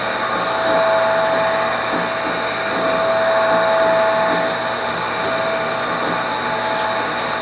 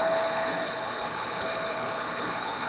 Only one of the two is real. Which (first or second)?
first